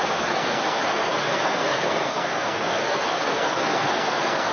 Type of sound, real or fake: fake